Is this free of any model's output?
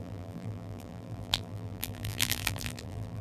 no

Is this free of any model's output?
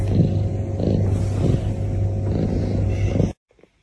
yes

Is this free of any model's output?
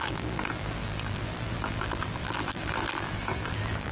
no